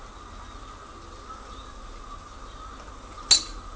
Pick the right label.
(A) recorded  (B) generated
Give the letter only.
A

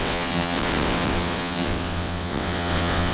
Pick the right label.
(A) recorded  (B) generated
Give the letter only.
B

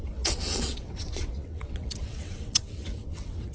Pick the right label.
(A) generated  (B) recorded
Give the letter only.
A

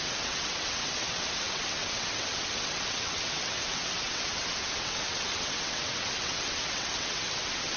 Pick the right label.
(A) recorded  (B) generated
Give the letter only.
B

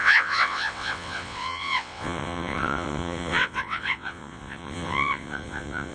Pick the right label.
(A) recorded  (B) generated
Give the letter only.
B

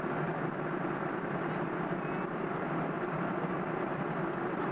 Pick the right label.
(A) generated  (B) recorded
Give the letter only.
B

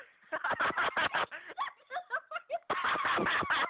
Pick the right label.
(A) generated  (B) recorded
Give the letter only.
B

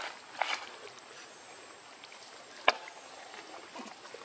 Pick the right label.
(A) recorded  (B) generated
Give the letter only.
A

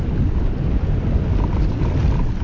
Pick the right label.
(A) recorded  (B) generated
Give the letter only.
A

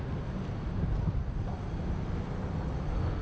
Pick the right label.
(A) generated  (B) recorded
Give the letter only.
B